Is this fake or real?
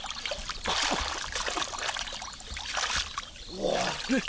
real